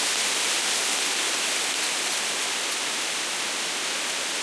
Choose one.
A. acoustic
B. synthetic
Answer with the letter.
A